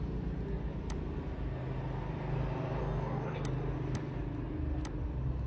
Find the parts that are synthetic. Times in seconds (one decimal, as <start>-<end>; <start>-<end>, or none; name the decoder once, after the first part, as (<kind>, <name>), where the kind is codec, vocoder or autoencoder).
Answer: 2.8-3.4 (codec, DAC)